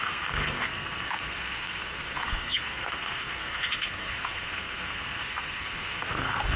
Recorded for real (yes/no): no